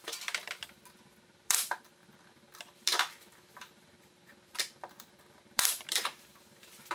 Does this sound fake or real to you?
fake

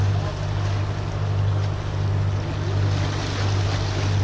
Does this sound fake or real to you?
real